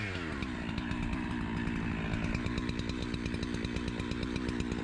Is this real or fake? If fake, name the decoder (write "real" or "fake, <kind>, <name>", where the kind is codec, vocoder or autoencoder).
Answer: real